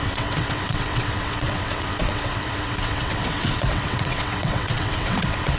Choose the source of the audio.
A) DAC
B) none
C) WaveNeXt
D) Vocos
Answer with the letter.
C